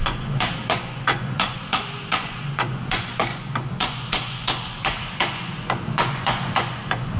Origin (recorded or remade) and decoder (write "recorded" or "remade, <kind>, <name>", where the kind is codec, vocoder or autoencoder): remade, vocoder, Vocos